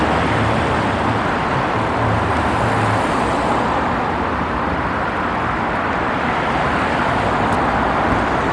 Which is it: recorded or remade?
recorded